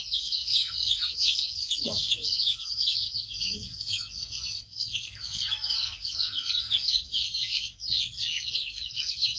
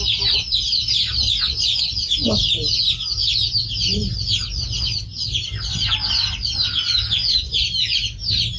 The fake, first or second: first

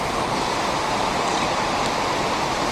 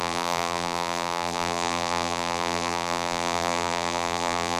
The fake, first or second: second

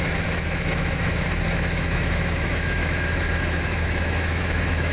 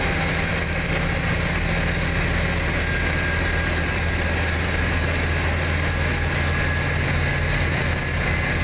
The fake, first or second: first